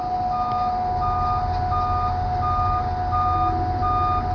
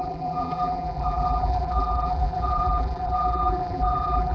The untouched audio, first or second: first